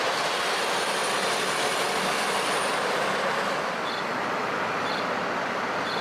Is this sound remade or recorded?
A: recorded